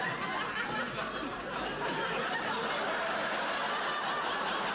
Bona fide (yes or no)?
yes